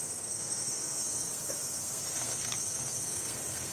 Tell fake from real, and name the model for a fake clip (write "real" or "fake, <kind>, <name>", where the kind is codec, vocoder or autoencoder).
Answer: fake, codec, SNAC